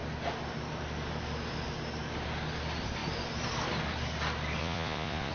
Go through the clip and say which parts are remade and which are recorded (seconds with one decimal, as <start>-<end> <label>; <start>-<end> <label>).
0.0-4.6 recorded; 4.6-5.3 remade